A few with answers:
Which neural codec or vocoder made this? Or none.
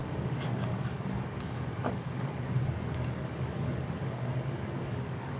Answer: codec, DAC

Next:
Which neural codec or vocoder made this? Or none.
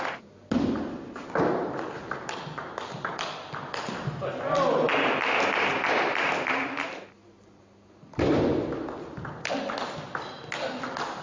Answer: none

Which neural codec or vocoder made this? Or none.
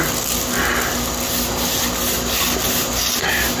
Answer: none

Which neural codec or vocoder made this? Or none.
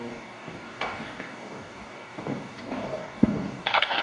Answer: codec, DAC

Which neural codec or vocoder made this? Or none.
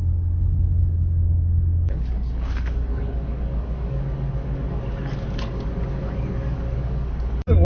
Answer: codec, DAC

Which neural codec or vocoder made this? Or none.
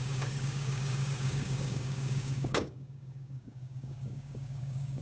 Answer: codec, DAC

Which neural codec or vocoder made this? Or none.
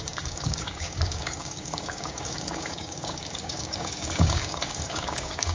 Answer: codec, DAC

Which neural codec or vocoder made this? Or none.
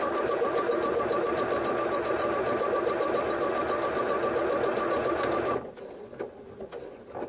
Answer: none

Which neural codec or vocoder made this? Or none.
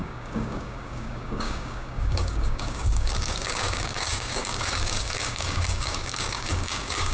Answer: codec, DAC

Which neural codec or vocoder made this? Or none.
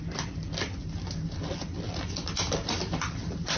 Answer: none